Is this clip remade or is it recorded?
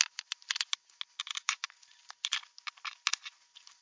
recorded